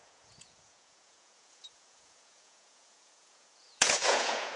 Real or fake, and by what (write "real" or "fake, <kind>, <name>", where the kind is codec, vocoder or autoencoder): fake, vocoder, Vocos